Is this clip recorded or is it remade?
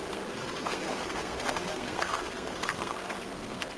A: remade